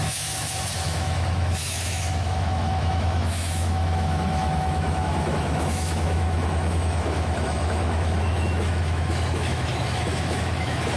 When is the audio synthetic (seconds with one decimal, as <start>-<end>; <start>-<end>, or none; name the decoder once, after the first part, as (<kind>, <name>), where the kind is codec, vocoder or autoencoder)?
0.0-11.0 (autoencoder, DAC-VAE)